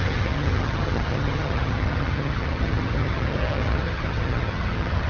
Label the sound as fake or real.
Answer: fake